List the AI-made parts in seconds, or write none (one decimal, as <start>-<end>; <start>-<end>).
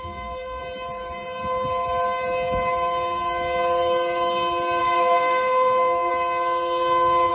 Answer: 0.0-0.6; 4.8-6.1